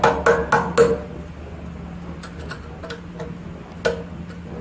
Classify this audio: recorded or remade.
recorded